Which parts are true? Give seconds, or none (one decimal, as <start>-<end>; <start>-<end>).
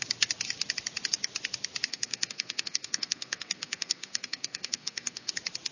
0.0-1.9; 5.3-5.7